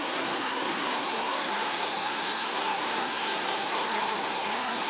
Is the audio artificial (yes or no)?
yes